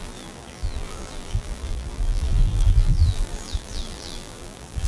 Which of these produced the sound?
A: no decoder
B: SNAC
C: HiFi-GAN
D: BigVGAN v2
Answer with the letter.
D